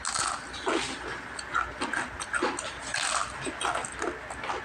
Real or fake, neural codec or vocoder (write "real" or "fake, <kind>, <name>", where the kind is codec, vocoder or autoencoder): real